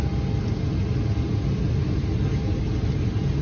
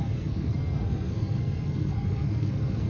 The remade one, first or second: second